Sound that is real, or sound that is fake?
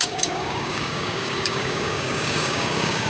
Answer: fake